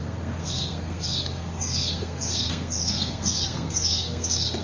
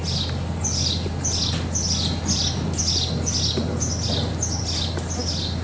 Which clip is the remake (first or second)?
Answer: first